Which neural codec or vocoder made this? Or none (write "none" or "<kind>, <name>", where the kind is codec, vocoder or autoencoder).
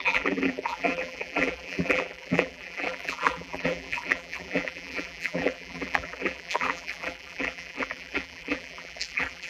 vocoder, BigVGAN v2